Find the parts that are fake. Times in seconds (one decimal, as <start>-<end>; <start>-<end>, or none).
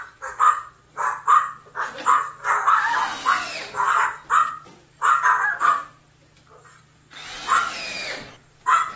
none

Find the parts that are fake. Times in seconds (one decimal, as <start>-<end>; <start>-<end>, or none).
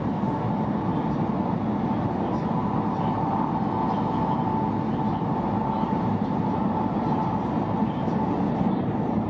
0.0-0.9; 5.6-9.3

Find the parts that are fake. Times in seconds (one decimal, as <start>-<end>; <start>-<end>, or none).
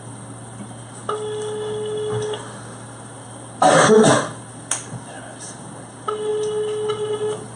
none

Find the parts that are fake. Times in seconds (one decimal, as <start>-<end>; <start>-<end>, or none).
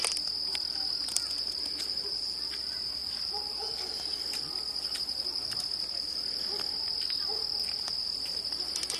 1.1-2.4; 3.0-4.2